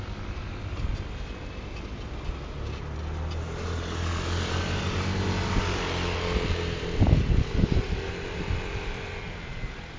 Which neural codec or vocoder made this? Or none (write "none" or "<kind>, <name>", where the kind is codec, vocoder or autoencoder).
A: none